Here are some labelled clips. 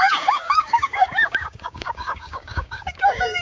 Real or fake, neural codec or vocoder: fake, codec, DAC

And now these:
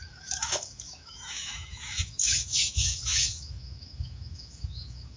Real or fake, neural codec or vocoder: fake, autoencoder, DAC-VAE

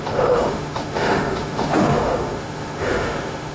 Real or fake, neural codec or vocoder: fake, autoencoder, DAC-VAE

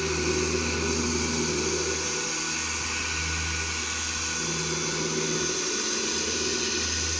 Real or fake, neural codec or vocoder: real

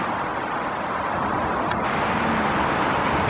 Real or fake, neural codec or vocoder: real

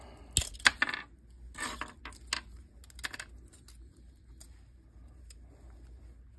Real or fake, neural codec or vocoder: real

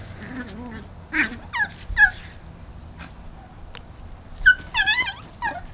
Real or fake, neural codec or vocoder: real